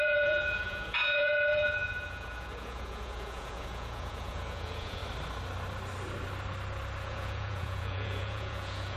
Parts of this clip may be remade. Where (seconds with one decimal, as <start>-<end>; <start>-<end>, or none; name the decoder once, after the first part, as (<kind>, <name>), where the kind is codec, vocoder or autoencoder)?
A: 0.0-5.0 (vocoder, Vocos); 7.0-9.0